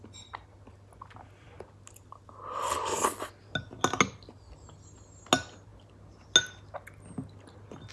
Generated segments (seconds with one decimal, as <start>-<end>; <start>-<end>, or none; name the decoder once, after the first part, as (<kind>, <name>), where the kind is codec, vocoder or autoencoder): none